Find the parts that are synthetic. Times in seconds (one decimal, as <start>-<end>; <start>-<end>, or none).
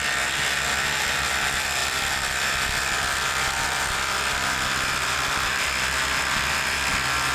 1.8-5.6